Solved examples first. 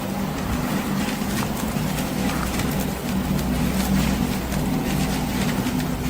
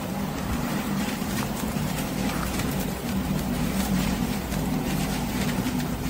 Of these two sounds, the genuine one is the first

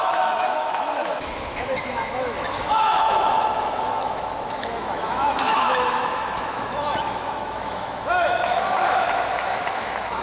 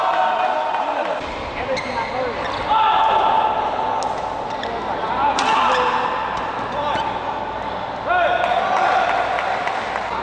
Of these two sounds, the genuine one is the second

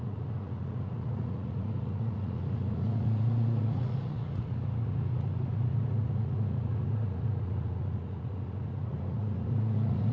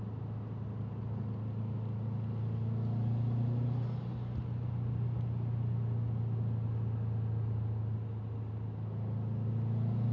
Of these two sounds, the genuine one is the second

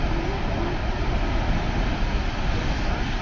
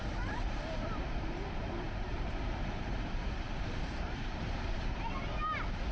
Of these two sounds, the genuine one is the first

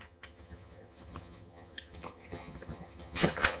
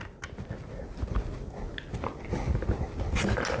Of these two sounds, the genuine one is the second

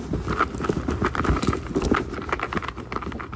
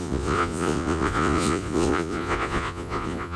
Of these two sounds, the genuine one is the first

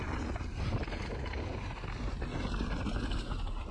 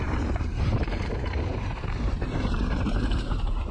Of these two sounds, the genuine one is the first